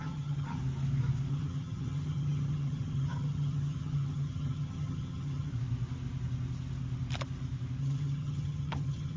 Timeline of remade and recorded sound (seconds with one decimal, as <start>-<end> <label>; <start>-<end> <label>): 0.0-0.6 remade; 0.6-1.3 recorded; 1.3-5.5 remade; 5.5-7.8 recorded; 7.8-9.2 remade